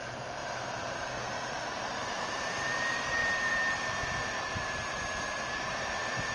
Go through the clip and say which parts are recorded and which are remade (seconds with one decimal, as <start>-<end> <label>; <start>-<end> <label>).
0.0-6.3 remade